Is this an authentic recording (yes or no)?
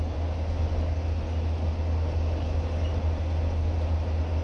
yes